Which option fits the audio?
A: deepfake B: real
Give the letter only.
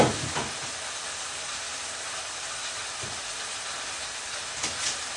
B